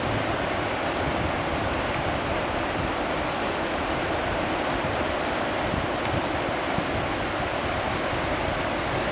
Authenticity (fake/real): real